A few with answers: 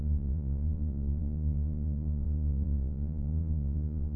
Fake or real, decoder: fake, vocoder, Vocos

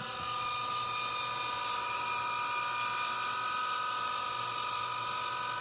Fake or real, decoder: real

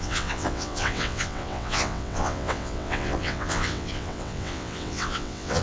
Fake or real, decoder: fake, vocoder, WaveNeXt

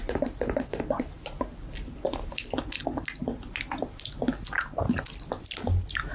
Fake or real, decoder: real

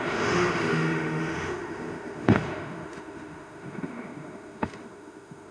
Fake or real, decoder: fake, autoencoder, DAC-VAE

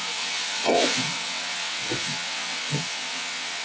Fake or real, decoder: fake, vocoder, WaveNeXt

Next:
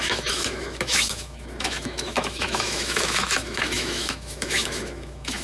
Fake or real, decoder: fake, autoencoder, DAC-VAE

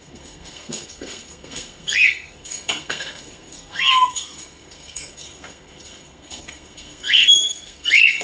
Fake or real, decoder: fake, codec, SNAC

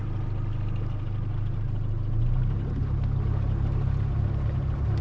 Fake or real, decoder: real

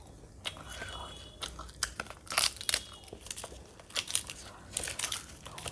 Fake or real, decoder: real